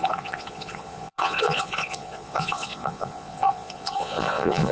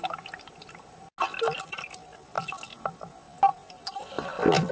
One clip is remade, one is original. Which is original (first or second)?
second